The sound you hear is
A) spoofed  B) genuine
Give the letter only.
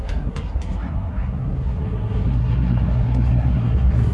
A